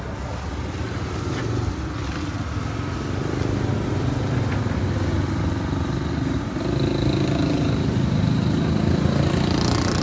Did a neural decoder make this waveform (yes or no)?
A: no